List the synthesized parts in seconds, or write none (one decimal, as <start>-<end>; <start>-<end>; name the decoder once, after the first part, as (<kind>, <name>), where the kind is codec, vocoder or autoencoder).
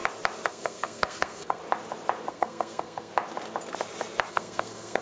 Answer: 0.5-1.6 (codec, SNAC); 2.3-3.1; 4.3-5.0